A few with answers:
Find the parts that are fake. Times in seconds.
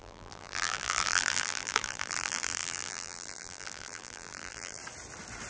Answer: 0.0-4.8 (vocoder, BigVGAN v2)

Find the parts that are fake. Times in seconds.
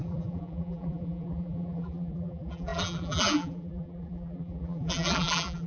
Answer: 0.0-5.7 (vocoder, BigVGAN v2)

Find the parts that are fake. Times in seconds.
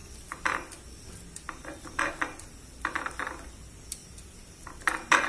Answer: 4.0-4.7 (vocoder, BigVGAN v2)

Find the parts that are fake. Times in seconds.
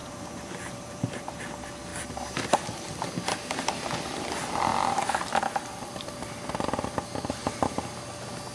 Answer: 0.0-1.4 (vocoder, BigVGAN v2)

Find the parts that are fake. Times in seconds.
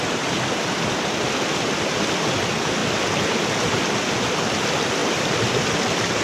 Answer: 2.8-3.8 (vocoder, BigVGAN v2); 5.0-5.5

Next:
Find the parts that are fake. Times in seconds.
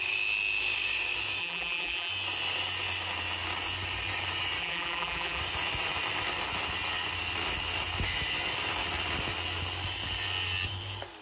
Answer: 1.4-2.1 (vocoder, BigVGAN v2); 4.6-5.4